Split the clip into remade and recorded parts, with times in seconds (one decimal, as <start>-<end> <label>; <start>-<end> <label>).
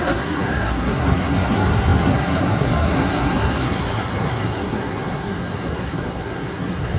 0.0-7.0 remade